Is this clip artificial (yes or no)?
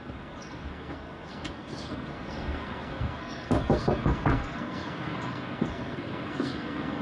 yes